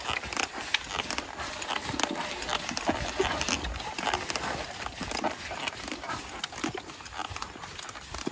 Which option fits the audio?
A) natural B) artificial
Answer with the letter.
A